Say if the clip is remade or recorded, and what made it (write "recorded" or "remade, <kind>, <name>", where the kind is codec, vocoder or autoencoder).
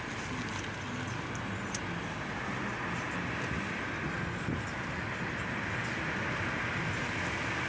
recorded